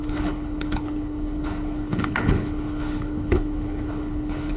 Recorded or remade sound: remade